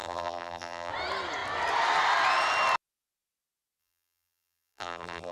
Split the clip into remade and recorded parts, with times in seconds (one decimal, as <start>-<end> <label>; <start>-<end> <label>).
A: 0.0-0.9 remade; 0.9-3.8 recorded; 3.8-5.3 remade